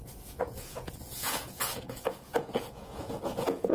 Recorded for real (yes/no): no